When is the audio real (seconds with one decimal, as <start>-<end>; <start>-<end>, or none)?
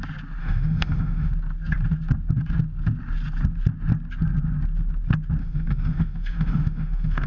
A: 0.0-0.4; 1.3-5.4